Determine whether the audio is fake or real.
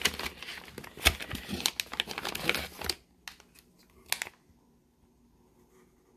real